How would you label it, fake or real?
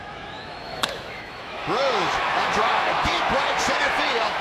fake